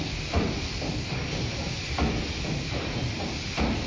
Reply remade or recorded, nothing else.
remade